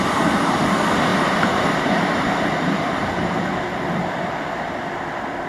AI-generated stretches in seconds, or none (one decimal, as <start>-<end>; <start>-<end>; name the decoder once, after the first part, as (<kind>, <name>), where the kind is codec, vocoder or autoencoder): 1.1-3.5 (vocoder, BigVGAN v2)